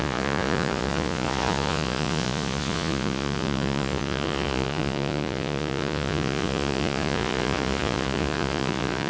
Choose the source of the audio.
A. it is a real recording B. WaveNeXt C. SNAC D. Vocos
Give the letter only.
D